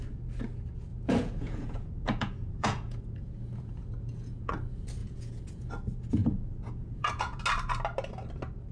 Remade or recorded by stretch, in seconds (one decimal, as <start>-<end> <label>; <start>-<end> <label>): 0.0-0.9 recorded; 0.9-4.5 remade; 4.5-5.0 recorded; 5.0-5.7 remade; 5.7-6.2 recorded; 6.2-7.4 remade; 7.4-8.7 recorded